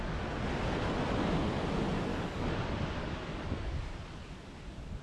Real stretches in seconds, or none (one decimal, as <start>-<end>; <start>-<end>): 0.0-2.1; 2.6-3.0; 3.7-5.0